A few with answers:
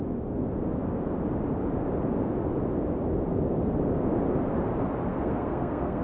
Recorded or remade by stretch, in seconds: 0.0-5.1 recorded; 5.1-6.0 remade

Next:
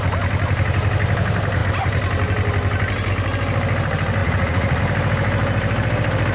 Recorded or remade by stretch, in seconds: 0.0-4.2 recorded; 4.2-4.8 remade; 4.8-6.3 recorded

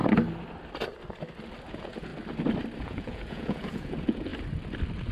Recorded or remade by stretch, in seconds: 0.0-1.7 recorded; 1.7-2.1 remade; 2.1-2.8 recorded; 2.8-4.3 remade; 4.3-5.1 recorded

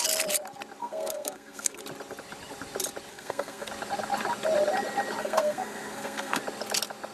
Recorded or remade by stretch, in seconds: 0.0-0.8 recorded; 0.8-1.8 remade; 1.8-3.1 recorded; 3.1-3.7 remade; 3.7-5.2 recorded; 5.2-6.4 remade; 6.4-7.1 recorded

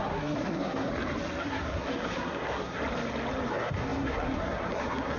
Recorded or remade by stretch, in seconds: 0.0-0.9 remade; 0.9-1.4 recorded; 1.4-2.8 remade; 2.8-3.5 recorded; 3.5-5.2 remade

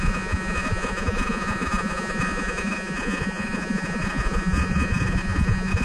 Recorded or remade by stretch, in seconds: 0.0-5.8 remade

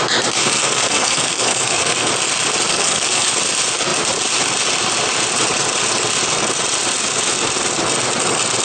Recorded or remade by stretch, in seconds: 0.0-0.4 recorded; 0.4-2.1 remade; 2.1-2.7 recorded; 2.7-3.3 remade; 3.3-8.6 recorded